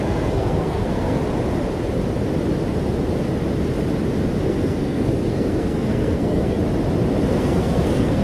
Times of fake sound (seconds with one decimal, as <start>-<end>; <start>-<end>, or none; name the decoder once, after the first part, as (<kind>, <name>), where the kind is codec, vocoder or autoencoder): 0.0-1.2 (codec, SNAC); 4.5-6.6; 7.3-8.2